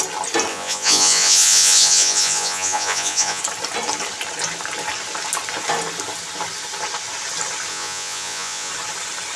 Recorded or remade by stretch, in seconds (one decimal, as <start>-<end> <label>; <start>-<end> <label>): 0.0-0.5 recorded; 0.5-3.4 remade; 3.4-7.7 recorded; 7.7-8.7 remade; 8.7-9.4 recorded